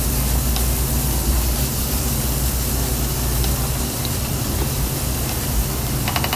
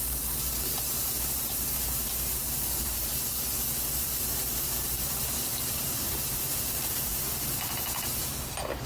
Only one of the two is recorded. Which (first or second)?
first